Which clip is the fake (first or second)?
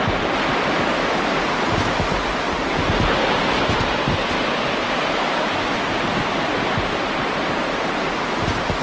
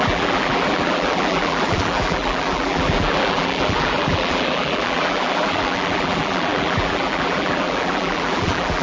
second